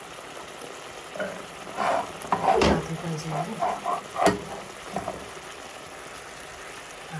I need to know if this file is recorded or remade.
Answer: recorded